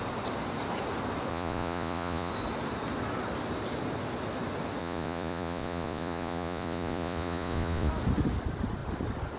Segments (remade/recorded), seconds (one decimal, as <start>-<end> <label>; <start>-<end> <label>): 0.0-1.3 recorded; 1.3-2.3 remade; 2.3-4.8 recorded; 4.8-7.9 remade; 7.9-9.4 recorded